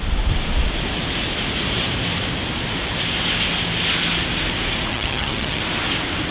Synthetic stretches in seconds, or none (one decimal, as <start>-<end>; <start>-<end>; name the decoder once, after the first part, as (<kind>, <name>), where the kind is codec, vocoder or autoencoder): 4.9-5.6 (vocoder, HiFi-GAN)